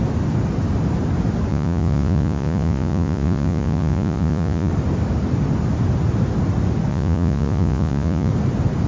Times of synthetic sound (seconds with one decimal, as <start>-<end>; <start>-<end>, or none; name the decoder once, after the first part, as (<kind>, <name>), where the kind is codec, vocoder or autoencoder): 1.5-4.7 (vocoder, Vocos); 6.9-8.3

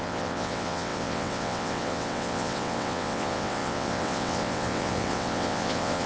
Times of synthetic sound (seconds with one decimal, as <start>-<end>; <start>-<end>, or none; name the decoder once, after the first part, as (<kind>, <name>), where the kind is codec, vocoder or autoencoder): 0.0-6.1 (vocoder, WaveNeXt)

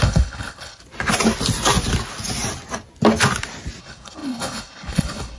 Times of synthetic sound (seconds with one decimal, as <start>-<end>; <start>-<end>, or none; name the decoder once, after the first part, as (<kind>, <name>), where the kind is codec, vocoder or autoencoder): 0.0-0.8 (codec, HILCodec); 3.8-5.4

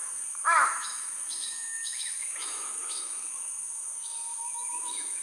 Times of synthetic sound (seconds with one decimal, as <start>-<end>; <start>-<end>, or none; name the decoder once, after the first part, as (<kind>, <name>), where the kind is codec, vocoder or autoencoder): 0.0-5.2 (autoencoder, DAC-VAE)

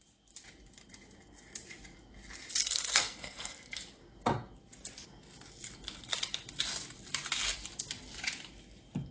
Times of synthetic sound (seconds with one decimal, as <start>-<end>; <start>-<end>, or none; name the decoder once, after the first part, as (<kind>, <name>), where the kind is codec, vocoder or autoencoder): 2.6-3.8 (codec, SNAC)